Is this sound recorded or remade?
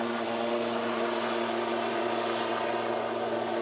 recorded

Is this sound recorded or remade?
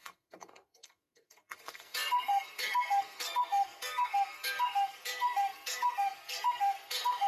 remade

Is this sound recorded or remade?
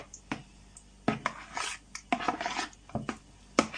recorded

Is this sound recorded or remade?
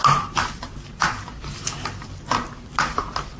recorded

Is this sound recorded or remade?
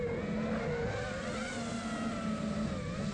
recorded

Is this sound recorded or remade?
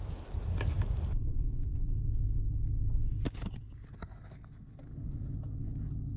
recorded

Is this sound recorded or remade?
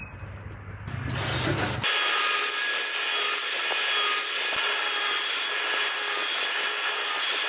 recorded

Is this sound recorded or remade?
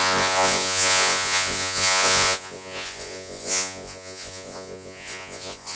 remade